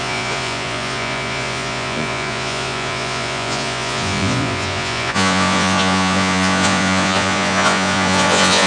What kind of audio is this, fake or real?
fake